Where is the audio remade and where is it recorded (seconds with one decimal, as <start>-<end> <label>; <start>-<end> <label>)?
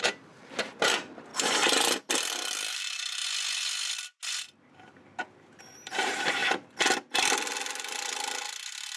0.0-1.3 remade; 1.3-2.7 recorded; 2.7-3.2 remade; 3.2-5.2 recorded; 5.2-6.4 remade; 6.4-9.0 recorded